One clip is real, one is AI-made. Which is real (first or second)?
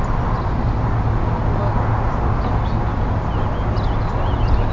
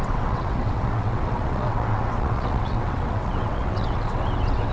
first